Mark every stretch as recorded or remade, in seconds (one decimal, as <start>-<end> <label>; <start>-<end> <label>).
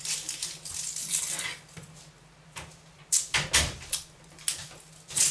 0.0-5.3 recorded